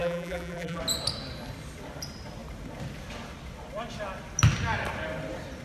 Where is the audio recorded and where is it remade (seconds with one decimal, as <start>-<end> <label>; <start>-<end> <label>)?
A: 0.0-0.8 remade; 0.8-5.6 recorded